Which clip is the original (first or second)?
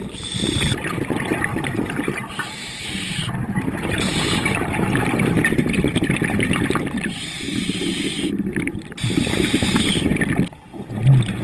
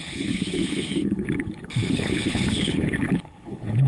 first